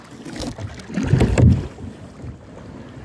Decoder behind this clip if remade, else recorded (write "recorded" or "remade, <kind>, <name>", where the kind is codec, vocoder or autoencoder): recorded